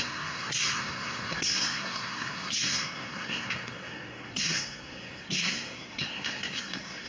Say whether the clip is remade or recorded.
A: remade